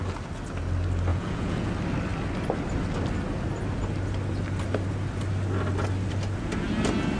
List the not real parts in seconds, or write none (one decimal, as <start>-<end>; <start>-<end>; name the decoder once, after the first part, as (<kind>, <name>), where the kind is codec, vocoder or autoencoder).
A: 1.1-1.7 (vocoder, Vocos)